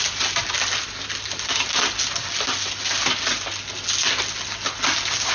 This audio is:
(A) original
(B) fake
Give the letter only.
A